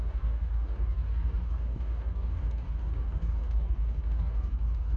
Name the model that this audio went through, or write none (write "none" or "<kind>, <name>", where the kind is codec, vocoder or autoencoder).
codec, DAC